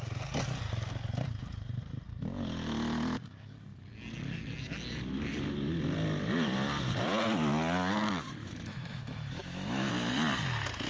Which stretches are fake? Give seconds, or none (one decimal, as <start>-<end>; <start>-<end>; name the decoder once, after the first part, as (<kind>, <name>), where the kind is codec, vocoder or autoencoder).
8.4-9.9 (autoencoder, DAC-VAE)